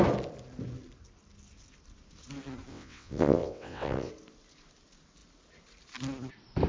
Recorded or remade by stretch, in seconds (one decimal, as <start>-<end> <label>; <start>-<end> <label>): 0.0-2.7 recorded; 2.7-4.1 remade; 4.1-6.7 recorded